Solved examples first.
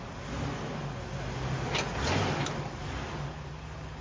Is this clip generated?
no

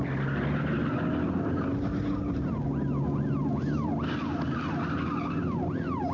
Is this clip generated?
no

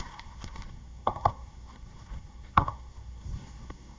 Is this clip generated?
yes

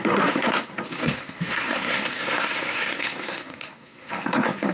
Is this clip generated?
yes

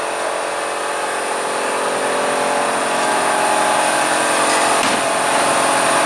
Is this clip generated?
no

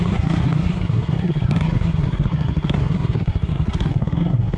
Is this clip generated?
yes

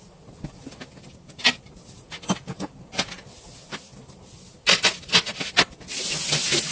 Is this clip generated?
no